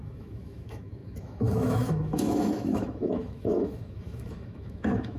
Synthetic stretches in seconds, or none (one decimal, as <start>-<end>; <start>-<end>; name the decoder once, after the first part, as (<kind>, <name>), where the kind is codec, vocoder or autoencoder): 0.0-5.2 (autoencoder, DAC-VAE)